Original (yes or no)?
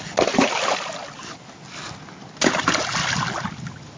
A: yes